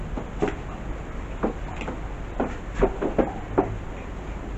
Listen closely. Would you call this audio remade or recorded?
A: recorded